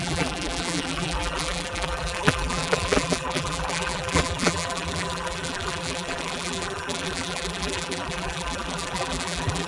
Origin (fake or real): fake